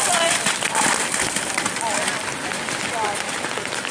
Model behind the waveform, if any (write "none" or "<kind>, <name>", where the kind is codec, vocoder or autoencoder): vocoder, BigVGAN v2